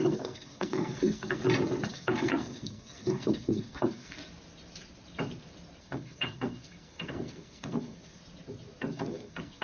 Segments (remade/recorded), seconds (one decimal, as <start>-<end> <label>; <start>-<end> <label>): 0.0-1.4 remade; 1.4-1.9 recorded; 1.9-4.2 remade; 4.2-5.8 recorded; 5.8-8.2 remade; 8.2-8.8 recorded; 8.8-9.6 remade